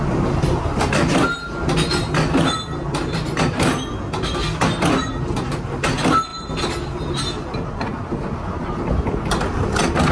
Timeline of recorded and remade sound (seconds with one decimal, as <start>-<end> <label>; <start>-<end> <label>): 0.0-10.1 recorded